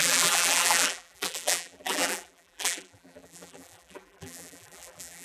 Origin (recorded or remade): remade